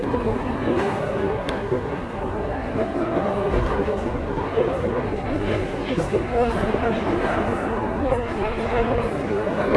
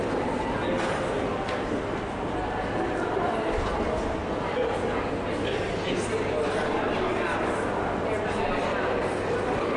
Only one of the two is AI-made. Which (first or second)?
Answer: first